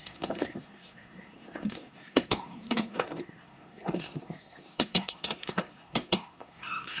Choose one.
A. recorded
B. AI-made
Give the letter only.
B